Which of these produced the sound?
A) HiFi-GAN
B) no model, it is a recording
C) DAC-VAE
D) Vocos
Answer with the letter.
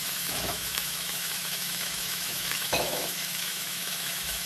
C